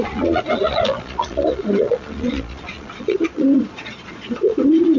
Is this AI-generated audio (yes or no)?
yes